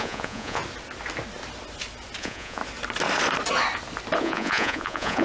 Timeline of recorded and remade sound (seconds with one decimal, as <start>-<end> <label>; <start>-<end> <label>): 0.0-0.6 remade; 0.6-2.2 recorded; 2.2-2.6 remade; 2.6-4.2 recorded; 4.2-5.2 remade